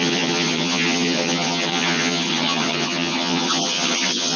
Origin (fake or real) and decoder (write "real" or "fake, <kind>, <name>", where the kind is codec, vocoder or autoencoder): fake, vocoder, HiFi-GAN